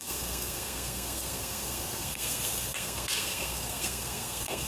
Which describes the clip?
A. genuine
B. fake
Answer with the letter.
B